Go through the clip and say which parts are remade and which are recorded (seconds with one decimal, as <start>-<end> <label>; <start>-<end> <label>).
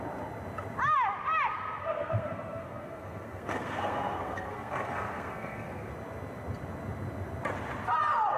0.0-1.8 recorded; 1.8-5.9 remade; 5.9-8.4 recorded